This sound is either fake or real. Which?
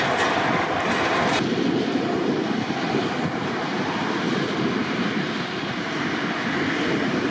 real